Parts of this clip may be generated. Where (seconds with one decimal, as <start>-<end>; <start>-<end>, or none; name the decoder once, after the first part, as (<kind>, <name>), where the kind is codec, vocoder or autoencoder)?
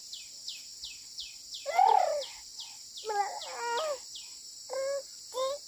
none